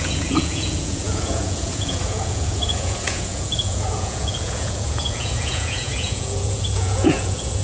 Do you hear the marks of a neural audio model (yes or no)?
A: yes